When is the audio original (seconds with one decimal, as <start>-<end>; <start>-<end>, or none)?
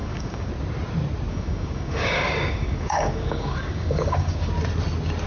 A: 0.5-1.3; 4.5-5.3